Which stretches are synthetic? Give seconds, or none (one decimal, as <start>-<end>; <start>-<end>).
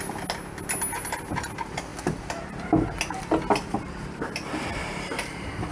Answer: none